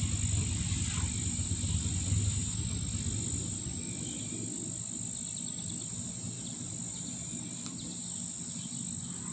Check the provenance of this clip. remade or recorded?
recorded